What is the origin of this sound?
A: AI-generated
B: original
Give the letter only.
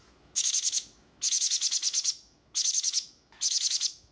A